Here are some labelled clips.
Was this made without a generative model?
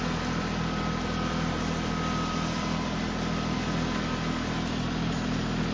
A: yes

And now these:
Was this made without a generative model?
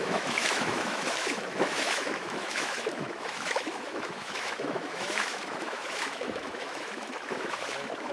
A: no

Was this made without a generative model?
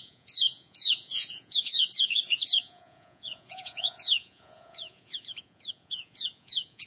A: no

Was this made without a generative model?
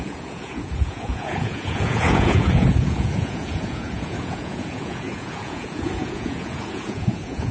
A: no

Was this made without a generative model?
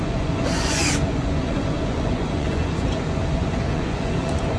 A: no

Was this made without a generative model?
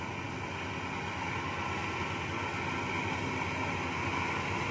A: yes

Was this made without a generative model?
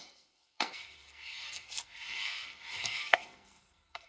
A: no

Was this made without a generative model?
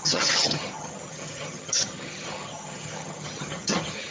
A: no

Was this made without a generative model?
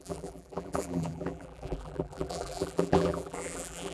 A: no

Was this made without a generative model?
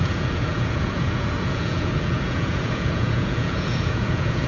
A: no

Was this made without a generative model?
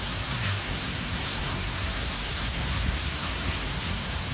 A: no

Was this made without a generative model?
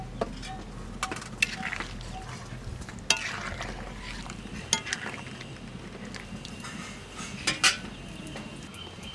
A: yes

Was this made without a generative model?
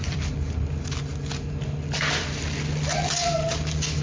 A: yes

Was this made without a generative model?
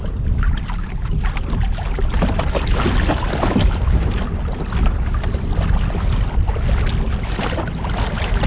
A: yes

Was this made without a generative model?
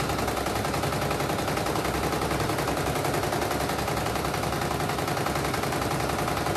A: yes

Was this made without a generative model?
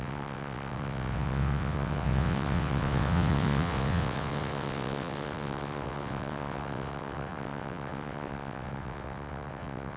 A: no